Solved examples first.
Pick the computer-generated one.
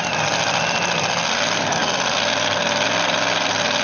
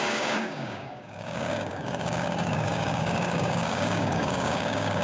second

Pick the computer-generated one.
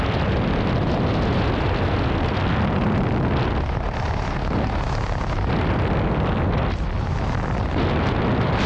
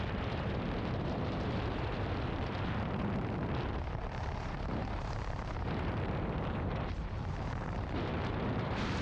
second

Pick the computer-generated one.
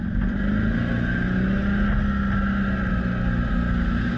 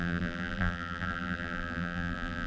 second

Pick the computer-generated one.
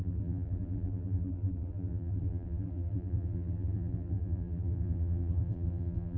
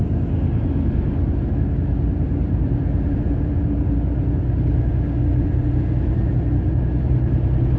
first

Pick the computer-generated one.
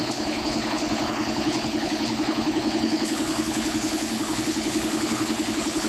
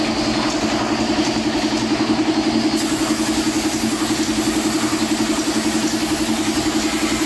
first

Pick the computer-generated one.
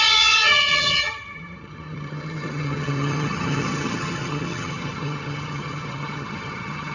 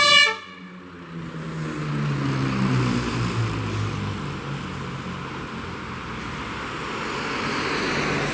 first